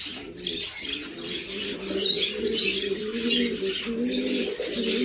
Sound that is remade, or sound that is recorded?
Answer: recorded